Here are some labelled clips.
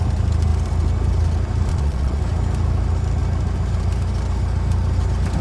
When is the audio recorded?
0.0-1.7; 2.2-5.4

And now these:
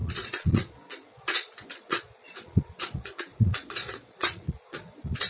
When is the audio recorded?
none